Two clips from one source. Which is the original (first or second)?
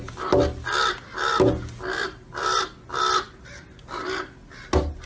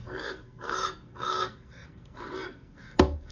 first